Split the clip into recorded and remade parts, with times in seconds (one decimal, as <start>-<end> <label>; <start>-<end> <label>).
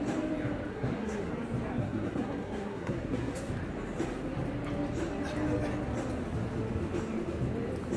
0.0-0.7 recorded; 0.7-1.3 remade; 1.3-1.8 recorded; 1.8-3.5 remade; 3.5-8.0 recorded